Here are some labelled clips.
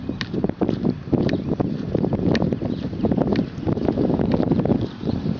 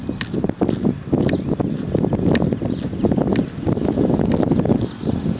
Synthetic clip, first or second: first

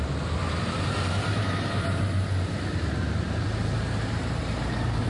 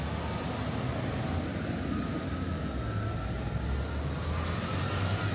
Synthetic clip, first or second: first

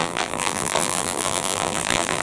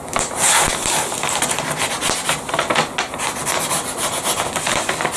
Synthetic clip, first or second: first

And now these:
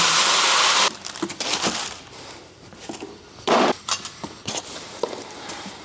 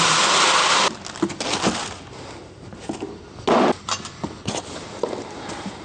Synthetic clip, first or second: first